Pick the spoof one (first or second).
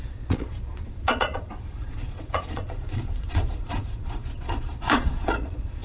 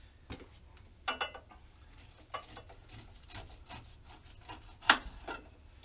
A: first